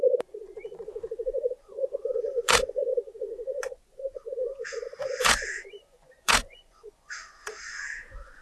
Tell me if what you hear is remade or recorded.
remade